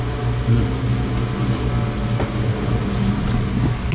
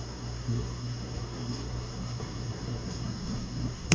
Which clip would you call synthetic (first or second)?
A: second